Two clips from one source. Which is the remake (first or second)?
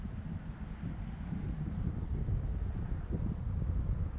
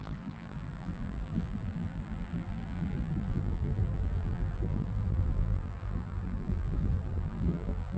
second